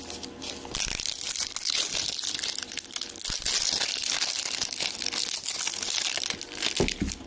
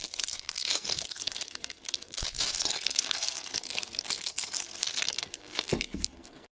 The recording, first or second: first